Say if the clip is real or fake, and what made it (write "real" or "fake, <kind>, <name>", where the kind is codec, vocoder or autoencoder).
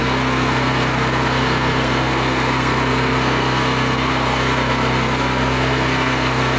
fake, codec, SNAC